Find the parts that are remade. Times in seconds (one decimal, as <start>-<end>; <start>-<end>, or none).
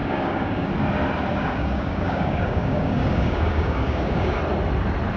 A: 0.0-0.7; 1.3-4.4